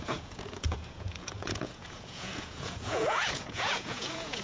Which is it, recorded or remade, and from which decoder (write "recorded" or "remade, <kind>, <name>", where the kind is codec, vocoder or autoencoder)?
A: remade, vocoder, Vocos